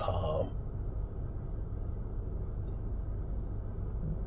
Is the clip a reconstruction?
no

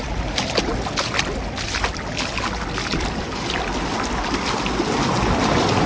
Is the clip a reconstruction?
no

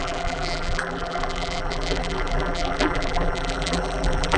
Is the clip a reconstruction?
yes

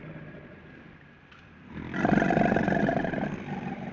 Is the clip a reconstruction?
no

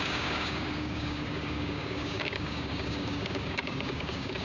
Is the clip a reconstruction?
yes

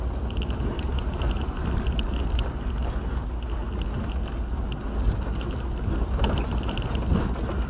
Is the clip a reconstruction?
no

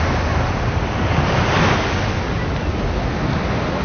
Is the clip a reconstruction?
no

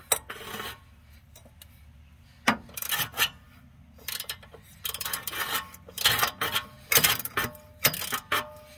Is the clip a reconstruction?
no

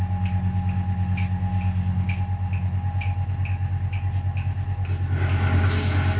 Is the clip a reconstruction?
no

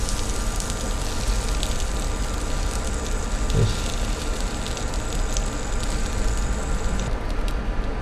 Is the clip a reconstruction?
no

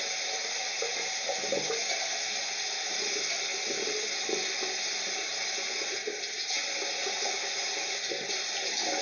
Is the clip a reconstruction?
no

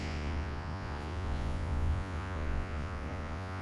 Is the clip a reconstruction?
yes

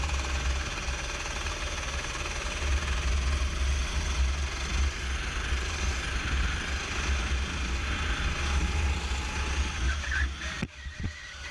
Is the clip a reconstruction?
no